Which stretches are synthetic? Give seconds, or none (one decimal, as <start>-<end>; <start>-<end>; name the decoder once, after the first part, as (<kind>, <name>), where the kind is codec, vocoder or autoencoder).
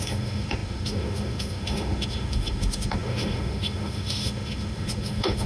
0.0-5.5 (autoencoder, DAC-VAE)